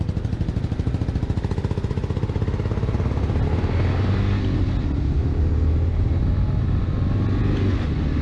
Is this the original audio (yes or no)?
yes